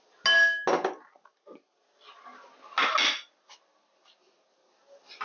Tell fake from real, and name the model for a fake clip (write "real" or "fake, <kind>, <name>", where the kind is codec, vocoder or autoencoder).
real